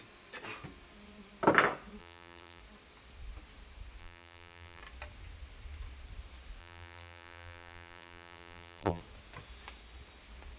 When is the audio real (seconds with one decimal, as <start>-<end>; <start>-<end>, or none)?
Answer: 0.0-2.0; 2.6-4.0; 4.8-6.6; 9.0-10.6